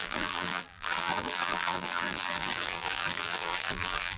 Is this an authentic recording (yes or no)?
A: no